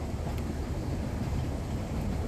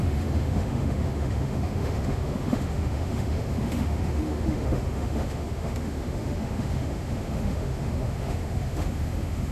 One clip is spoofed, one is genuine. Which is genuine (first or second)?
first